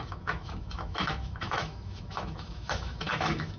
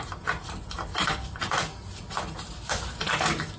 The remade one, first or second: first